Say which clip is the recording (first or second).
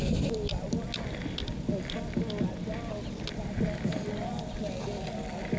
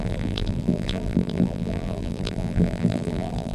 first